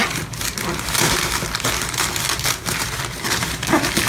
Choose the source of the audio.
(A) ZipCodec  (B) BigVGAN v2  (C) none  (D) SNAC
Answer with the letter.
C